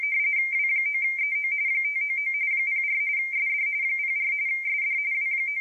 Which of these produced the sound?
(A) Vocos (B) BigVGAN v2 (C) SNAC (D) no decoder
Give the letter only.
D